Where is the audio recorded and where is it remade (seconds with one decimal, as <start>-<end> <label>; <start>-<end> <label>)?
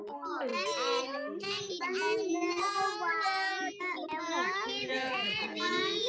0.0-4.8 recorded; 4.8-6.1 remade